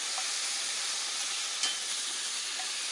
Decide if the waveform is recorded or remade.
recorded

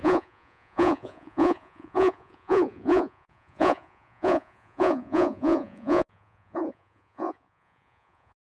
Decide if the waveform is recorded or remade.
remade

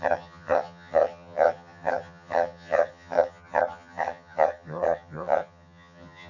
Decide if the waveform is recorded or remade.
remade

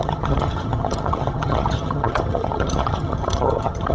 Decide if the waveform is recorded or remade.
remade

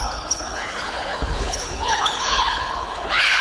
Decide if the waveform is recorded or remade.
remade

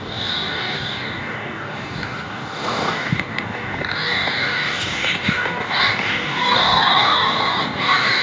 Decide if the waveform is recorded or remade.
remade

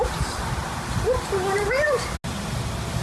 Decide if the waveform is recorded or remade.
recorded